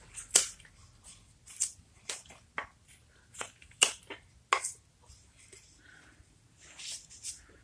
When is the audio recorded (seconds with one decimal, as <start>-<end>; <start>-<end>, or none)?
0.0-7.6